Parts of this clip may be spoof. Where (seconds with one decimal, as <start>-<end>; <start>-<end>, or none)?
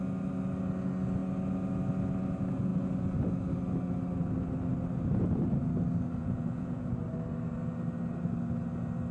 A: 6.2-6.9